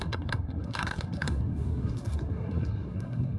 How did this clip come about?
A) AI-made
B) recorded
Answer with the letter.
A